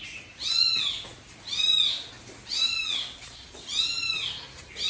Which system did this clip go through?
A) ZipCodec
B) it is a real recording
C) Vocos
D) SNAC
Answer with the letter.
B